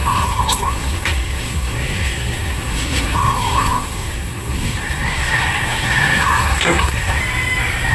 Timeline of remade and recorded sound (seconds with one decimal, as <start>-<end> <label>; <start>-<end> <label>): 0.0-7.2 remade; 7.2-7.9 recorded